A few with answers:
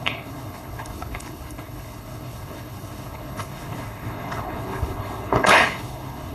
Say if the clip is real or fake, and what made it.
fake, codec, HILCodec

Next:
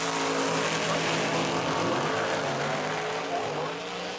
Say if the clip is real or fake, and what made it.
real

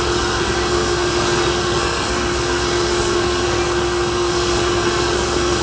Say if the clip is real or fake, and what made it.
fake, codec, SNAC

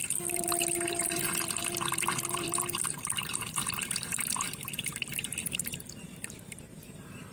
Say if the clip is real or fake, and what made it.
fake, vocoder, BigVGAN v2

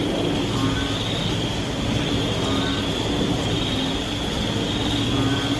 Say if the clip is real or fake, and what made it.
real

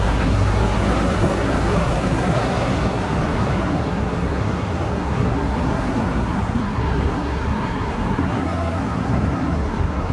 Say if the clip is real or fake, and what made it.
fake, codec, SNAC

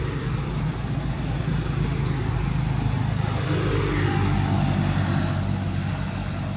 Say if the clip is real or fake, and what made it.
real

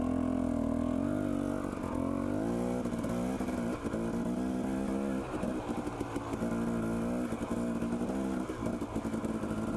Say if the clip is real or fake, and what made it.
real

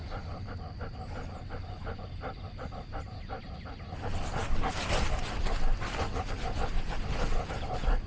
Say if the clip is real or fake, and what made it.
real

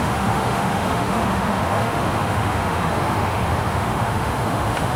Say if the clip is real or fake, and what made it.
fake, autoencoder, DAC-VAE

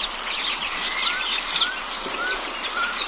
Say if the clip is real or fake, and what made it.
fake, vocoder, BigVGAN v2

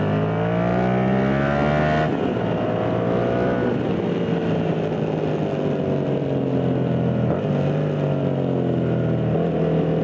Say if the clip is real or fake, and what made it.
real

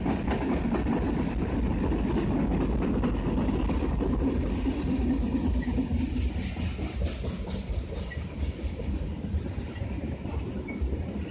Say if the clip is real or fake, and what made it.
real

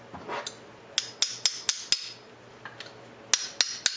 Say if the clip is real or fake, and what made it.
real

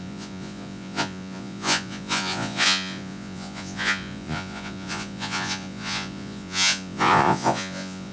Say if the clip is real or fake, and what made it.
fake, vocoder, Vocos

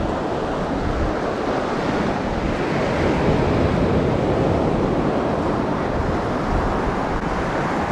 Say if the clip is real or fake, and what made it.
real